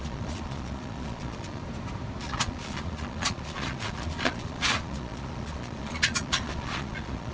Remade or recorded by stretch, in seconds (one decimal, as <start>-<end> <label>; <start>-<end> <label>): 0.0-1.6 remade; 1.6-2.2 recorded; 2.2-7.3 remade